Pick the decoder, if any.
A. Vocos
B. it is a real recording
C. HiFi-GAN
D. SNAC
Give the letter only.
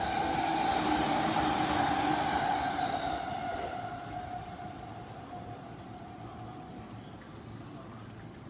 B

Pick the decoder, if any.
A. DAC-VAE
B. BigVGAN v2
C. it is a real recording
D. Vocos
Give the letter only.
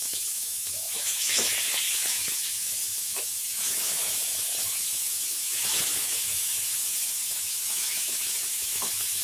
A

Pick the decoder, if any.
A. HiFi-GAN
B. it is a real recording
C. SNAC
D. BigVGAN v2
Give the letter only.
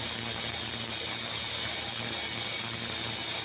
B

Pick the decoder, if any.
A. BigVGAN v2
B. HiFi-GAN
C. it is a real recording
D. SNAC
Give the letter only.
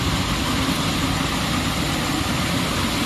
C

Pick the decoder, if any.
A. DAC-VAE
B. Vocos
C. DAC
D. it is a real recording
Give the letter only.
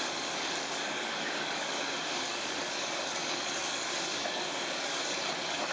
C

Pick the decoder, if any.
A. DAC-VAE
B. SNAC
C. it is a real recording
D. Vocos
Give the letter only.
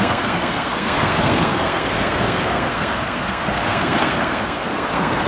B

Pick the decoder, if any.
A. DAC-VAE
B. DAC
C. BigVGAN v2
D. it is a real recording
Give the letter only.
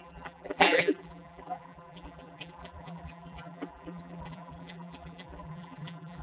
C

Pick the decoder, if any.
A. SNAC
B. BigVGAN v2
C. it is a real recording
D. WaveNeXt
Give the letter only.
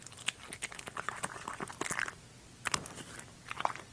C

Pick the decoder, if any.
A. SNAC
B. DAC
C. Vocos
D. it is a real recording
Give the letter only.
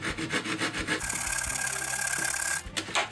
D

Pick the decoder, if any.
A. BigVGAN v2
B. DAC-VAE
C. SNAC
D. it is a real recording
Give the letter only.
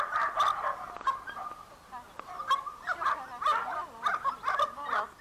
D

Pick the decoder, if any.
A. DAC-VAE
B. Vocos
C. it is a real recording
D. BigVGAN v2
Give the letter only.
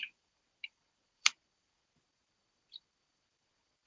D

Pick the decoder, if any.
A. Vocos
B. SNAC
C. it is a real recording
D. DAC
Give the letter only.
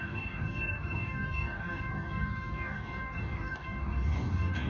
D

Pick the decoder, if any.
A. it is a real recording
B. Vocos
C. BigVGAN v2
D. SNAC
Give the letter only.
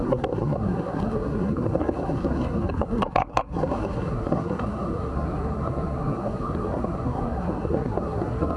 D